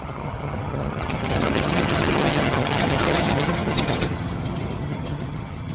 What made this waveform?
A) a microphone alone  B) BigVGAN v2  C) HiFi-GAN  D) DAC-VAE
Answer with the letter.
C